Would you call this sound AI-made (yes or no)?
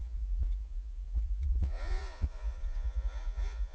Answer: yes